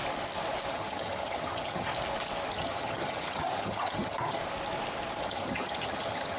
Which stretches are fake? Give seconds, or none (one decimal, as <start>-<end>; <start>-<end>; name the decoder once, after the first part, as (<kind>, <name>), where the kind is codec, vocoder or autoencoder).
0.7-1.9 (vocoder, HiFi-GAN); 2.5-4.4; 5.2-6.4